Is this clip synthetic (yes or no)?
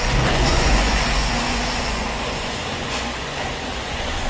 yes